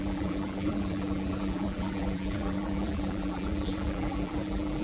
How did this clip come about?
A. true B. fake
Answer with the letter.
B